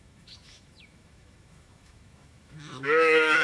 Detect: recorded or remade remade